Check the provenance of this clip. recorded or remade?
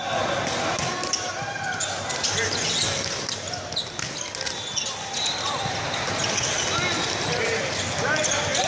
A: recorded